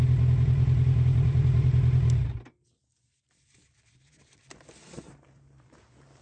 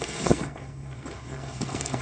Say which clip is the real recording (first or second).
first